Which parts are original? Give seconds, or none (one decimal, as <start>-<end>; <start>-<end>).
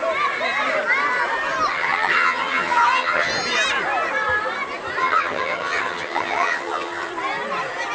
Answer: 0.0-1.7; 3.3-5.0; 7.1-7.9